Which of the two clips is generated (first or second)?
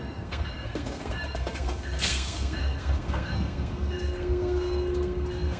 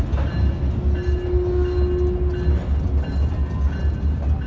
first